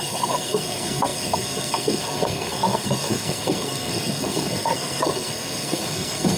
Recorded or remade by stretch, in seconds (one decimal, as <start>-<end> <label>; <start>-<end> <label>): 0.0-6.4 remade